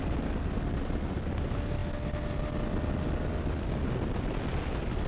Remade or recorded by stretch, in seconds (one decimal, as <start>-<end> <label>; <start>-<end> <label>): 0.0-5.1 recorded